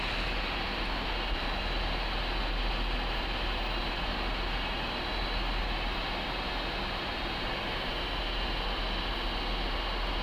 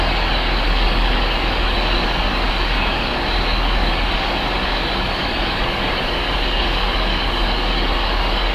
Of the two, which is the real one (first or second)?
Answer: first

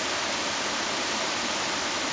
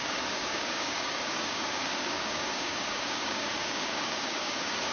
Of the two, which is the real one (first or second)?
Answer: first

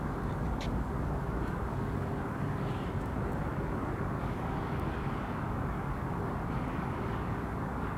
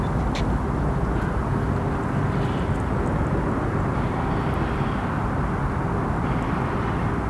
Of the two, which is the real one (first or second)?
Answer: second